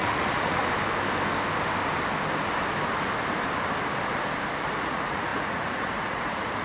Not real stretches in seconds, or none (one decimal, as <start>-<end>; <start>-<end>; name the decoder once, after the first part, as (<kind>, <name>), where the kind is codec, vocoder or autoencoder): 0.0-0.6 (vocoder, Vocos); 4.6-6.6